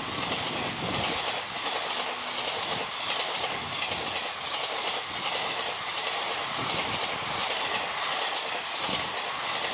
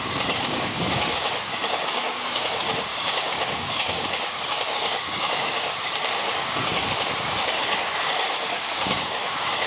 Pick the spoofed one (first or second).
second